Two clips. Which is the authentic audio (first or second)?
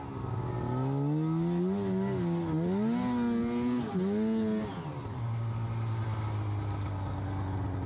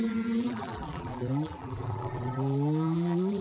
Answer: first